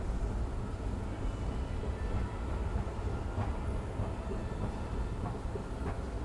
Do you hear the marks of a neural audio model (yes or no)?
no